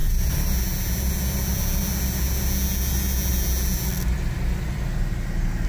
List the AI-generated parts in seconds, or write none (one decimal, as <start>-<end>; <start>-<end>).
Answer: none